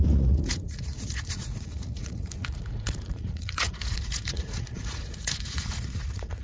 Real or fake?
fake